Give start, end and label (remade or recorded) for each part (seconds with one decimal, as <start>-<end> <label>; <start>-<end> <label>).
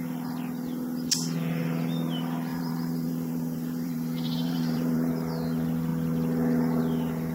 0.0-2.5 recorded; 2.5-5.1 remade; 5.1-7.3 recorded